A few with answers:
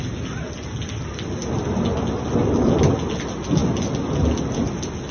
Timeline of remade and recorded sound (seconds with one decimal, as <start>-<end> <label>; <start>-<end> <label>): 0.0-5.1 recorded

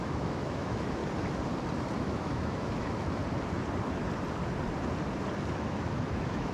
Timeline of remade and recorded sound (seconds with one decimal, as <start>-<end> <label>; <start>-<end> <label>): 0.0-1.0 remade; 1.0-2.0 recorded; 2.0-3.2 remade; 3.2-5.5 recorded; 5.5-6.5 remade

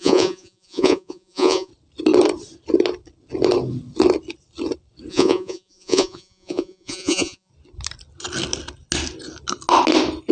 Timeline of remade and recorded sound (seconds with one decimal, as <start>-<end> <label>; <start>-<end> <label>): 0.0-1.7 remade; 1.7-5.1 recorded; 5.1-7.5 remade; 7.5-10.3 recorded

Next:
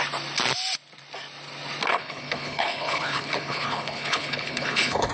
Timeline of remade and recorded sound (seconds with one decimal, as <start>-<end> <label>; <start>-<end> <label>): 0.0-1.9 recorded; 1.9-5.1 remade